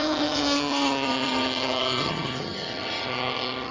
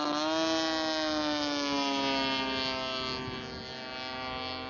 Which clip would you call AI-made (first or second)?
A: first